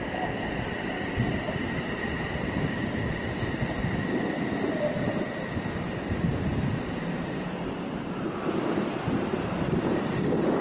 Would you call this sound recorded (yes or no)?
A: no